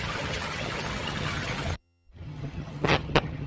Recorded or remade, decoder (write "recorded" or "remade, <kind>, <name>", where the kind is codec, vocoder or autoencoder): remade, vocoder, HiFi-GAN